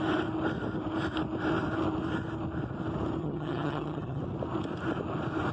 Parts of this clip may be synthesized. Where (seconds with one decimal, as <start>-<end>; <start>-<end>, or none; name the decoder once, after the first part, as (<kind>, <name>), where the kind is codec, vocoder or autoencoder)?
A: 3.2-4.2 (vocoder, HiFi-GAN)